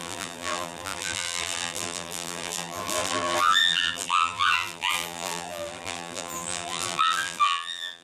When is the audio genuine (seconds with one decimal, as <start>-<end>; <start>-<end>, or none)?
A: none